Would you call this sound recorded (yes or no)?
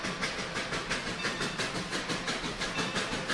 yes